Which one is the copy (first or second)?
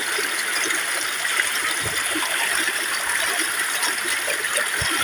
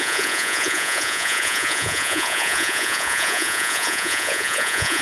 second